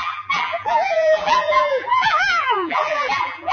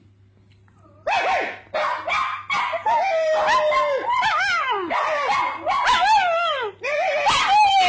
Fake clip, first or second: first